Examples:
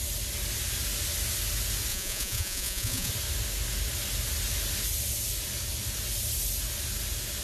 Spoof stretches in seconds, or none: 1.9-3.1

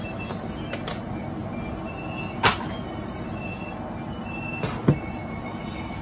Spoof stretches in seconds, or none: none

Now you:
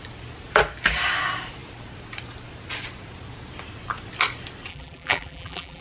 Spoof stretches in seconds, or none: 4.7-5.8

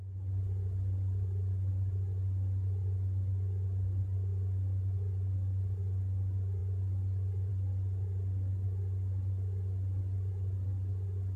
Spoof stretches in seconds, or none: none

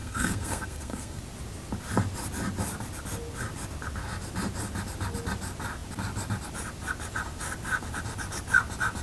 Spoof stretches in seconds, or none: 0.0-1.2

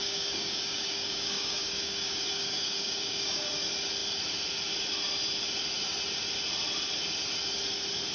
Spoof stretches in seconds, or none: 0.0-3.5

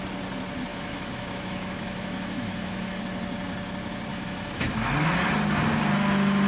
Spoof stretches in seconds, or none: 0.7-3.0; 4.1-4.9

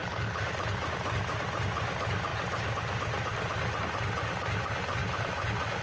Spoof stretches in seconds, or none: 0.0-0.9; 5.0-5.8